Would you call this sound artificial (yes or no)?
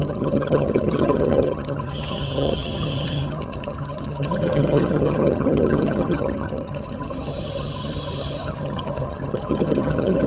yes